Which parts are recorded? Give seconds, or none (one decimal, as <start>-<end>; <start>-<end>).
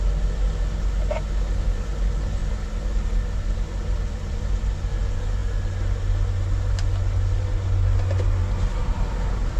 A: 0.0-2.4; 5.0-9.6